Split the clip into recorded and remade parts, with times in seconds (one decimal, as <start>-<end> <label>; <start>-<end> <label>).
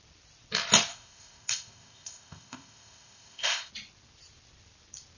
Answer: 0.0-0.9 recorded; 0.9-3.7 remade; 3.7-5.2 recorded